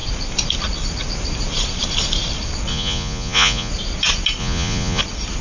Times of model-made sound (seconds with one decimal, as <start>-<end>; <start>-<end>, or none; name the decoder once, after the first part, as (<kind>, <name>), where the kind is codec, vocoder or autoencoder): 2.7-3.7 (vocoder, Vocos); 4.4-5.0